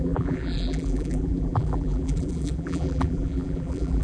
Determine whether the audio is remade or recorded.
remade